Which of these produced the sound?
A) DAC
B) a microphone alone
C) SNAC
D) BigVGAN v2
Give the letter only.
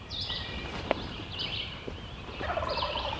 D